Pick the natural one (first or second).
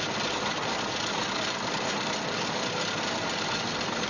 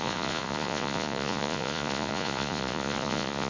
first